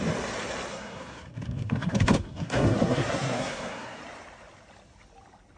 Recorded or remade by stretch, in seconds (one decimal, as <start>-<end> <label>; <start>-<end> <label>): 0.0-0.7 recorded; 0.7-4.0 remade; 4.0-5.6 recorded